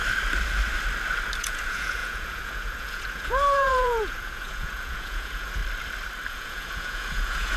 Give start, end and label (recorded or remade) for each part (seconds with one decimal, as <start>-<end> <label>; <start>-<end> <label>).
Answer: 0.0-1.4 recorded; 1.4-5.6 remade; 5.6-6.3 recorded; 6.3-7.6 remade